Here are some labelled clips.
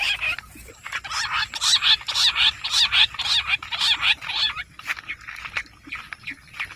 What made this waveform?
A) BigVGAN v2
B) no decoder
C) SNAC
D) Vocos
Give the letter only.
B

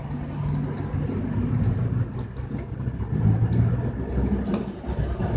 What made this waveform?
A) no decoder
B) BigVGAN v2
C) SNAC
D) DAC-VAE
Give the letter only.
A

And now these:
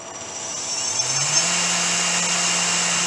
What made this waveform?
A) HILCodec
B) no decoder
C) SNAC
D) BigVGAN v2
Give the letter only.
B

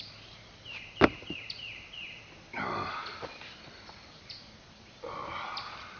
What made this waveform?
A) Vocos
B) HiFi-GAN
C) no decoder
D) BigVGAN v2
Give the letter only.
D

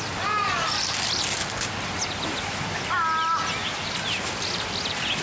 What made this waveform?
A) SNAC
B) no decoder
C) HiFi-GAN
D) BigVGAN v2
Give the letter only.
B